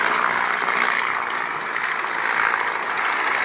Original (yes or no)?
yes